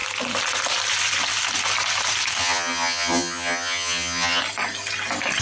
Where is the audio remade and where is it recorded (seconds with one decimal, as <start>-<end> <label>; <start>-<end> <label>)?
0.0-2.4 recorded; 2.4-4.4 remade; 4.4-5.4 recorded